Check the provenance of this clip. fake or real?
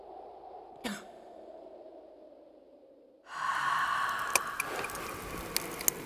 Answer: real